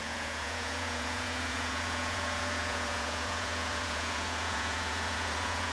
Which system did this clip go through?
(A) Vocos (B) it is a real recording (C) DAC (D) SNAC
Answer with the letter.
A